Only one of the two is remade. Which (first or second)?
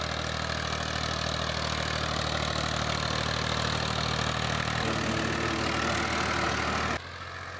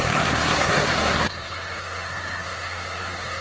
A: second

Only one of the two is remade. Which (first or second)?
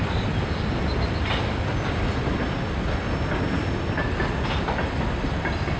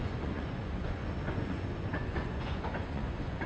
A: second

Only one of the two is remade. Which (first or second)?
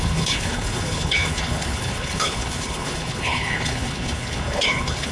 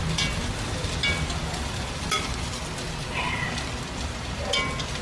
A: first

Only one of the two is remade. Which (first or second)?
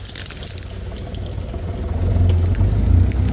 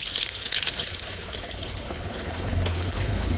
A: second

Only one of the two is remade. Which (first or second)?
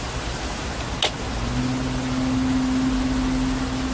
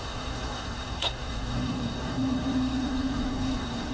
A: second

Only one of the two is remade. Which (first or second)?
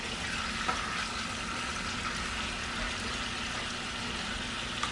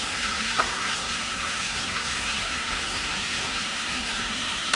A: second